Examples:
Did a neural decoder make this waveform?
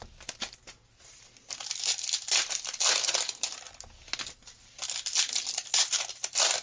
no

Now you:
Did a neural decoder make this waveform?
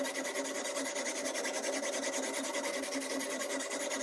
no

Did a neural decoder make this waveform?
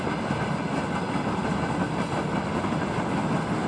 no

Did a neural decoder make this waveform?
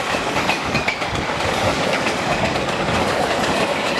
yes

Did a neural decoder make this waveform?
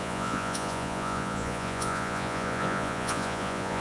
yes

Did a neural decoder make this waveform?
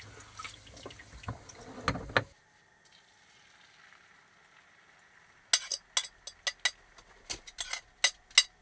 no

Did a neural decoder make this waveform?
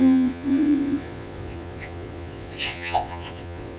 yes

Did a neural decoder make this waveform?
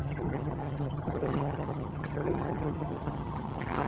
yes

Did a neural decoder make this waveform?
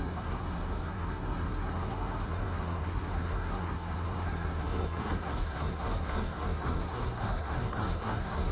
yes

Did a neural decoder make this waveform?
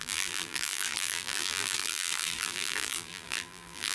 yes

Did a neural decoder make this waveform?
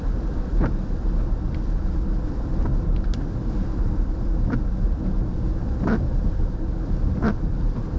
yes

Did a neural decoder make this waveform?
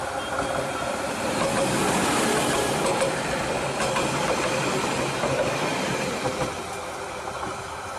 no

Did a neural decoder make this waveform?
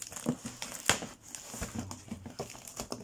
no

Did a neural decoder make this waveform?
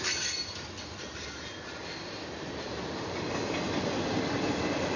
yes